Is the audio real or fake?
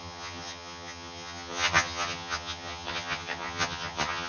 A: fake